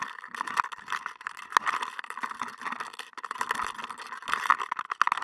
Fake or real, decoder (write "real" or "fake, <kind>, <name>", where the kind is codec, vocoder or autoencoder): real